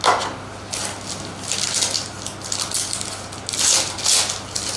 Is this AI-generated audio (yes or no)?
no